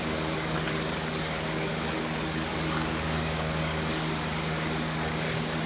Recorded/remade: remade